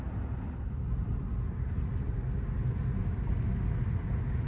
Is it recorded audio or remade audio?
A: recorded